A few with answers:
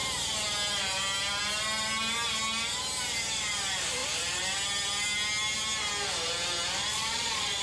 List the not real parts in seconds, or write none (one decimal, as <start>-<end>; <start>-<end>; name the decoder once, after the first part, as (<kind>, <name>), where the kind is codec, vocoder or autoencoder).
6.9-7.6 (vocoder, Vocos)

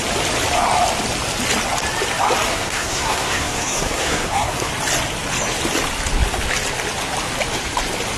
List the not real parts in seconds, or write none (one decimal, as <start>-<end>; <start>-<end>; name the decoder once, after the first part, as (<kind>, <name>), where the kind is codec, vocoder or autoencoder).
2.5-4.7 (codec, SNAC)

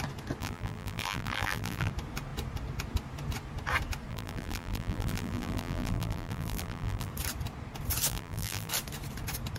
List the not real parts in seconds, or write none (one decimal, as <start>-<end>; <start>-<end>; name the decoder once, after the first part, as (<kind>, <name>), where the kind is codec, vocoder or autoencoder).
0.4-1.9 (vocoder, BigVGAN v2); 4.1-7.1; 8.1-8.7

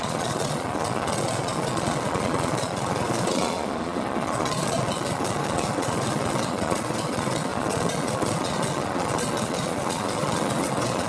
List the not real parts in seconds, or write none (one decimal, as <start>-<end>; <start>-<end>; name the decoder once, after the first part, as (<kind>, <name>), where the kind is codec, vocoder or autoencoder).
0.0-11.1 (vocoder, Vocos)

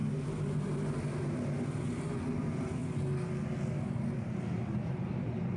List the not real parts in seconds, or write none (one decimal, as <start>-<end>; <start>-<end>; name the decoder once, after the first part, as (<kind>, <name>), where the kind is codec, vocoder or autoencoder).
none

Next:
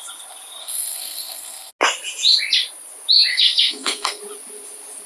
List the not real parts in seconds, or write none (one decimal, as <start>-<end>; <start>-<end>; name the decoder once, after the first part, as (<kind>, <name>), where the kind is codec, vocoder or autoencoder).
0.6-1.7 (codec, SNAC); 3.3-4.2

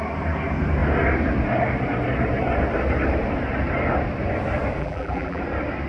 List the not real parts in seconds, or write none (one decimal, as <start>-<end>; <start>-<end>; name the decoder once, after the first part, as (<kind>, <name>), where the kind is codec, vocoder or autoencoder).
4.8-5.4 (vocoder, BigVGAN v2)

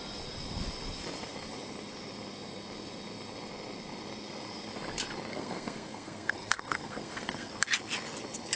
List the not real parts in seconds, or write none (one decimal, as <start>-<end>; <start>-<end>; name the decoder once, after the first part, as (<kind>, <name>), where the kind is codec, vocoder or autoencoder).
5.3-7.5 (codec, SNAC)